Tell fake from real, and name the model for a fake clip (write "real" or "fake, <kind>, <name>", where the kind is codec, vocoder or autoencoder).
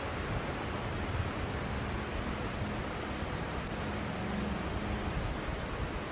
real